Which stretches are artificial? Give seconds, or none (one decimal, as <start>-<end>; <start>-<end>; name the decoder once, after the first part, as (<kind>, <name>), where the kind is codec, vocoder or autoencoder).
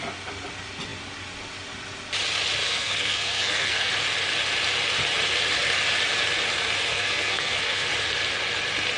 2.6-3.9 (codec, SNAC); 6.9-7.9